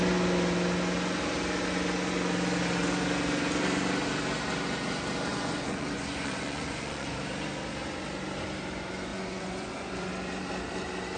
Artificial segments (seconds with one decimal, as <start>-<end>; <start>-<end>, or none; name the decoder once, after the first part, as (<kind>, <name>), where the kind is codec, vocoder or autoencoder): 5.3-7.2 (vocoder, Vocos); 9.1-10.1